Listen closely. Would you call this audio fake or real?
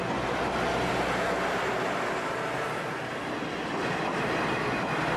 real